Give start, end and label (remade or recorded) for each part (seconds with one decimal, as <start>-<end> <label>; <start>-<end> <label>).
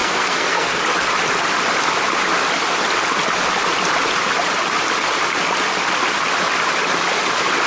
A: 0.0-0.8 remade; 0.8-7.7 recorded